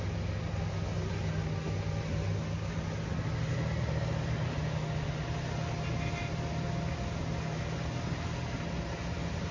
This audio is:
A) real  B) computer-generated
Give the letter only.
A